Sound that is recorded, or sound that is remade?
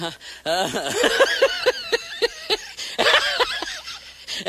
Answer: recorded